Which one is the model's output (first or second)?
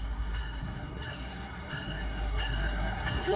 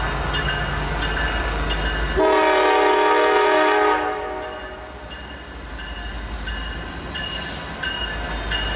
first